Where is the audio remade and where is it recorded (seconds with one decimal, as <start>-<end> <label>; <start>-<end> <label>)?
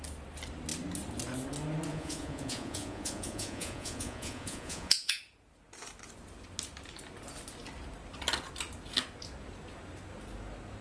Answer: 0.0-1.9 recorded; 1.9-5.2 remade; 5.2-10.8 recorded